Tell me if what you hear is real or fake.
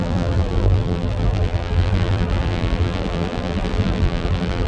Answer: fake